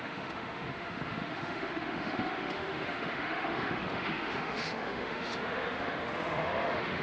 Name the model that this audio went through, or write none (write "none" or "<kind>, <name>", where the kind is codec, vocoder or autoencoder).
autoencoder, DAC-VAE